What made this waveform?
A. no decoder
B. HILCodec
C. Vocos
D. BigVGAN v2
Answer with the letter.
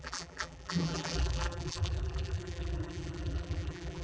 D